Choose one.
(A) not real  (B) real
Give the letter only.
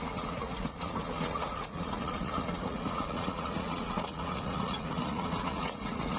A